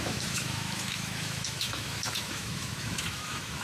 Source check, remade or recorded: remade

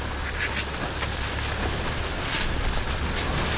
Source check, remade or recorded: recorded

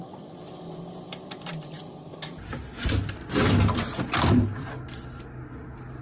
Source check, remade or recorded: recorded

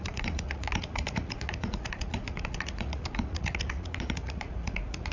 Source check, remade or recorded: remade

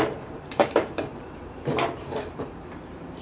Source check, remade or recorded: remade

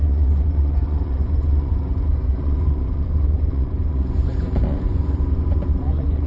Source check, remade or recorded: remade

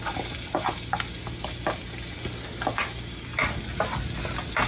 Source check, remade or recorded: recorded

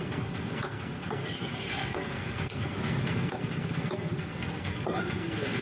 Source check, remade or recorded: remade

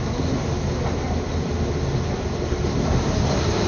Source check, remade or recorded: recorded